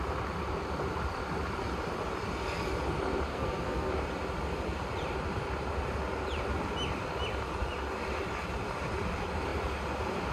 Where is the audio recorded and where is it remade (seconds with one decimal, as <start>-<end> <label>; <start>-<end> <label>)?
0.0-3.3 recorded; 3.3-3.9 remade; 3.9-10.3 recorded